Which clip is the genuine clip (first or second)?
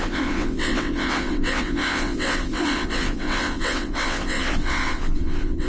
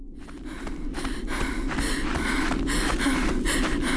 second